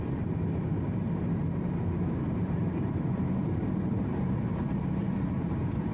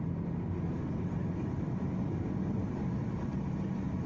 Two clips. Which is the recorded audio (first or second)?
second